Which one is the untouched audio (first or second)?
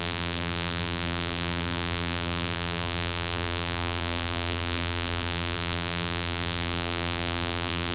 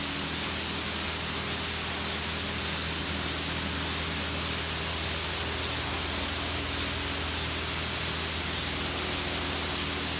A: second